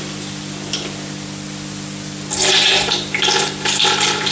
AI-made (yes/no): no